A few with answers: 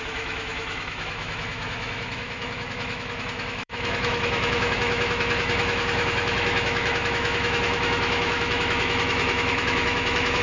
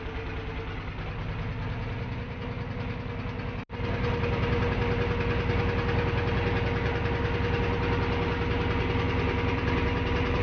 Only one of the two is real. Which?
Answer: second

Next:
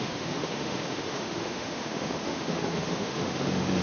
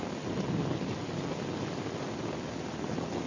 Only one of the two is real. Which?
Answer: second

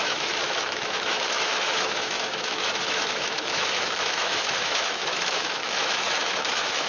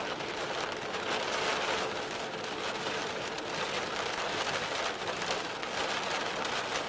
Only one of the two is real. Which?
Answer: second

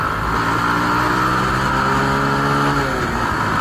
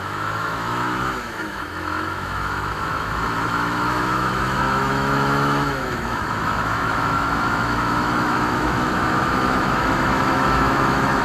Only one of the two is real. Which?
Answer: first